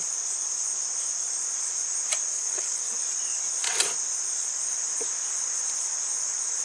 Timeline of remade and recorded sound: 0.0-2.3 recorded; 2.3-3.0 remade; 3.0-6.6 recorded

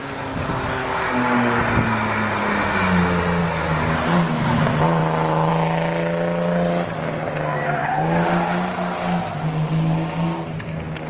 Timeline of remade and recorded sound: 0.0-0.8 recorded; 0.8-1.6 remade; 1.6-3.4 recorded; 3.4-4.6 remade; 4.6-11.1 recorded

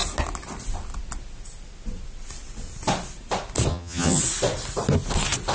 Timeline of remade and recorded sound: 0.0-3.7 recorded; 3.7-4.2 remade; 4.2-5.5 recorded

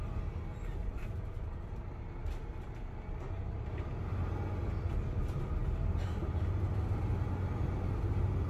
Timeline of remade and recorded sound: 0.0-8.5 recorded

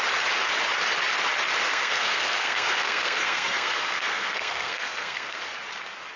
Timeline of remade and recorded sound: 0.0-1.7 recorded; 1.7-5.4 remade; 5.4-6.2 recorded